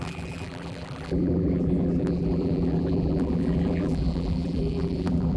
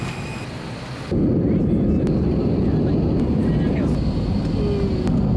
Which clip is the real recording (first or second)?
second